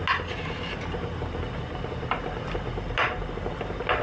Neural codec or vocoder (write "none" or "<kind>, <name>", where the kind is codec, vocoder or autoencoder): none